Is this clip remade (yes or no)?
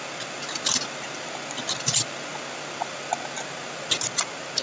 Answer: no